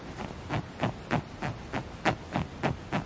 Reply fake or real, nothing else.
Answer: real